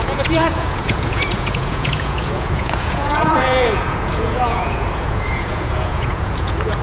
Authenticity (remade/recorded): remade